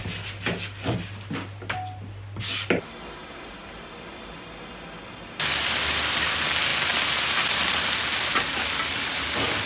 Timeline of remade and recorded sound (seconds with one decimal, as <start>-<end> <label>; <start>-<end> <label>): 0.0-3.2 recorded; 3.2-4.0 remade; 4.0-9.7 recorded